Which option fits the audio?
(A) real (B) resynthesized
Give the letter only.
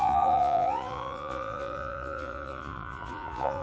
B